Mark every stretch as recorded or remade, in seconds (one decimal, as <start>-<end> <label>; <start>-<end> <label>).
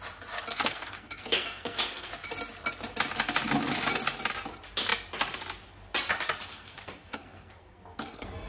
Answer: 0.0-0.5 recorded; 0.5-2.1 remade; 2.1-6.5 recorded; 6.5-8.5 remade